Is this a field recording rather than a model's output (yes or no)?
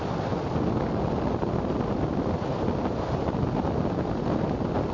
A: yes